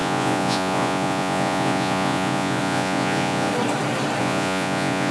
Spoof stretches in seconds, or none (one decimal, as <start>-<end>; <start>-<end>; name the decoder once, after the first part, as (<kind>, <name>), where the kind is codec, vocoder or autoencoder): 0.0-3.5 (vocoder, Vocos); 4.2-5.1